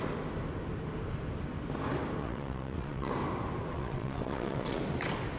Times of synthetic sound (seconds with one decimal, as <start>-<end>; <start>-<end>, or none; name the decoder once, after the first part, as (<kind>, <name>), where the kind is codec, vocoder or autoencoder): 2.2-3.1 (vocoder, WaveNeXt); 3.7-4.8